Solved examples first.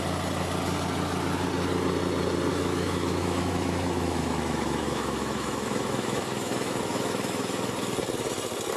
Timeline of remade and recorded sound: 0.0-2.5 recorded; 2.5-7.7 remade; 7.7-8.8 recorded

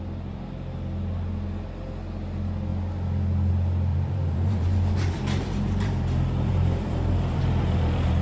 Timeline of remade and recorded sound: 0.0-3.9 recorded; 3.9-8.2 remade